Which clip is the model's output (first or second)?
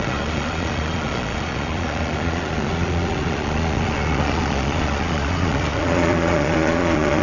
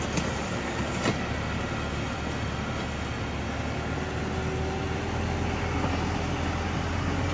first